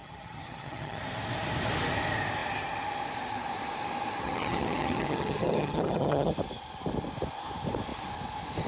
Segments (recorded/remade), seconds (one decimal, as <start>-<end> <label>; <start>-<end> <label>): 0.0-1.0 remade; 1.0-4.2 recorded; 4.2-6.3 remade; 6.3-8.7 recorded

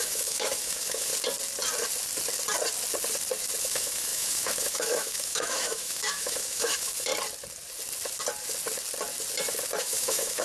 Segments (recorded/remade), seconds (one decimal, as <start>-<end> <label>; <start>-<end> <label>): 0.0-1.1 remade; 1.1-3.6 recorded; 3.6-7.1 remade; 7.1-9.8 recorded; 9.8-10.4 remade